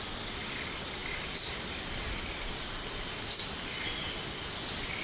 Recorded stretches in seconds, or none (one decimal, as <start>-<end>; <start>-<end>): 0.0-5.0